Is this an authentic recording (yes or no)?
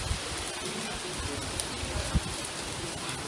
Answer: yes